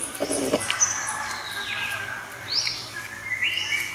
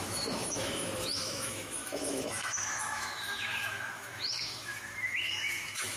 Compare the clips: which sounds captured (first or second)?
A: first